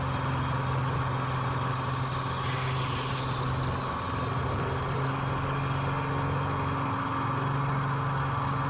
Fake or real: real